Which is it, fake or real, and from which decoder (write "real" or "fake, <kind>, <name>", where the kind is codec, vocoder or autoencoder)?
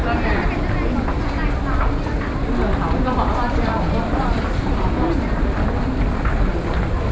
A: real